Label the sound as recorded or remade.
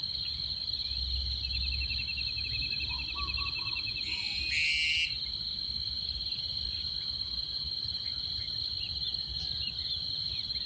recorded